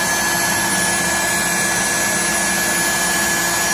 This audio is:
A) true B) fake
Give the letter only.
A